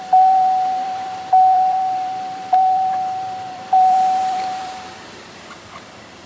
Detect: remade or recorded remade